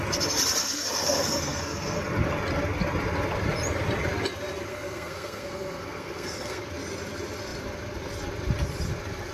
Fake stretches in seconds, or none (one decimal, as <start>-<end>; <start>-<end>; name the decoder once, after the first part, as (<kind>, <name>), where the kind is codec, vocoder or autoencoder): 0.6-2.0 (codec, SNAC); 4.7-6.6